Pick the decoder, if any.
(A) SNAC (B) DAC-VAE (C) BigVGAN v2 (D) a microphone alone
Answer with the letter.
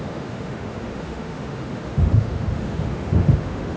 B